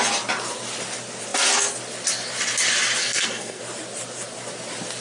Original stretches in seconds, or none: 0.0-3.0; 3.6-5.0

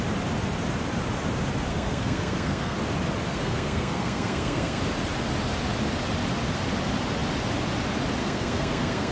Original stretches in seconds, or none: 0.0-1.7; 2.8-3.3; 4.8-8.2